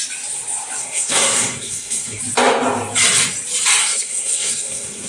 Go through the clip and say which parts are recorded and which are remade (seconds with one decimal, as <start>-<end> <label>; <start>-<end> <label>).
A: 0.0-0.8 recorded; 0.8-2.2 remade; 2.2-3.8 recorded; 3.8-5.1 remade